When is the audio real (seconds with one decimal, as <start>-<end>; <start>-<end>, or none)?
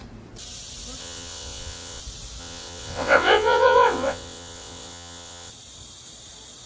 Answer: 0.0-1.0; 2.0-2.4; 5.5-6.7